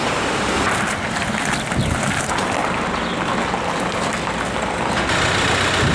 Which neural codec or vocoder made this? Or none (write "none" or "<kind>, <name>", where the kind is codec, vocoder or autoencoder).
none